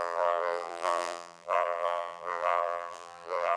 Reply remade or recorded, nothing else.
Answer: remade